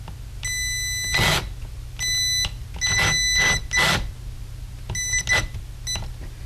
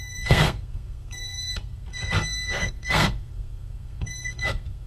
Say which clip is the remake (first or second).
second